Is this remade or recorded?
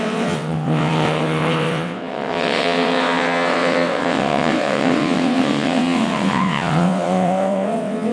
remade